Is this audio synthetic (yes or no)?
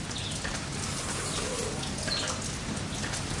no